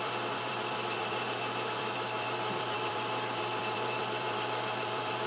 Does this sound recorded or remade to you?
remade